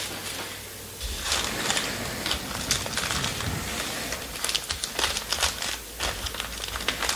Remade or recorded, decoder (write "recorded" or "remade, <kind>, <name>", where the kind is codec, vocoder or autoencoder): recorded